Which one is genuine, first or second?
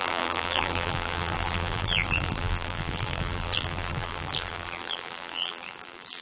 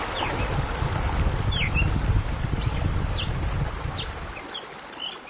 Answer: second